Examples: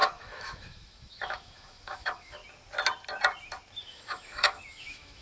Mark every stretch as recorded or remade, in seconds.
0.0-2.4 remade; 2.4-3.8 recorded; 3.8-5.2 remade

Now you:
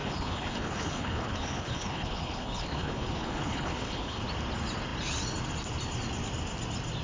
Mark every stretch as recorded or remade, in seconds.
0.0-4.2 remade; 4.2-7.0 recorded

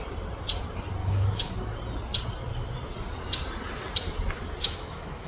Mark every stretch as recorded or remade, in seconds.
0.0-1.0 recorded; 1.0-1.5 remade; 1.5-4.6 recorded; 4.6-5.3 remade

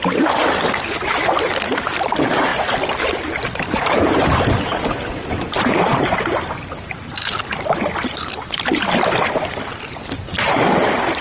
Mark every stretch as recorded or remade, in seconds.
0.0-0.4 remade; 0.4-1.3 recorded; 1.3-11.2 remade

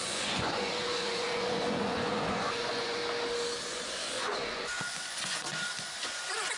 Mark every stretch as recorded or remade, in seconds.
0.0-3.0 remade; 3.0-3.7 recorded; 3.7-6.6 remade

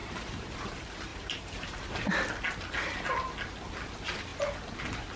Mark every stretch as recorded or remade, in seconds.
0.0-0.6 remade; 0.6-1.1 recorded; 1.1-2.1 remade; 2.1-5.2 recorded

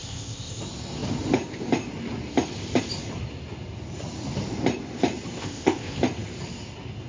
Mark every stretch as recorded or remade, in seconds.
0.0-0.6 remade; 0.6-5.4 recorded; 5.4-6.0 remade; 6.0-7.1 recorded